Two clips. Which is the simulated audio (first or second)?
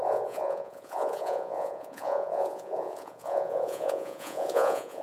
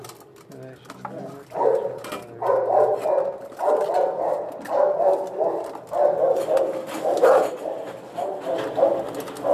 first